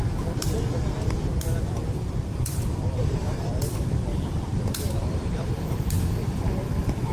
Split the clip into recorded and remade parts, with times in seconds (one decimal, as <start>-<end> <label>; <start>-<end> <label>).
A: 0.0-2.3 recorded; 2.3-5.7 remade; 5.7-7.1 recorded